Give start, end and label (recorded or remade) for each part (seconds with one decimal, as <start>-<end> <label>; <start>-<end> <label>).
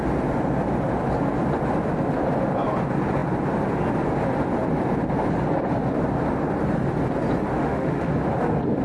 0.0-7.5 recorded; 7.5-8.1 remade; 8.1-8.8 recorded